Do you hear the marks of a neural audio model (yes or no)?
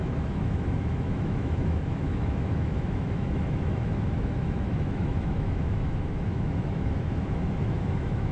yes